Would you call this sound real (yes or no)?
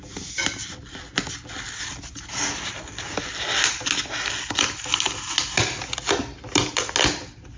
yes